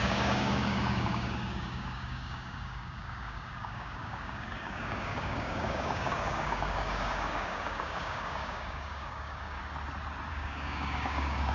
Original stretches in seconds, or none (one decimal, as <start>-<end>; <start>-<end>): 9.6-10.3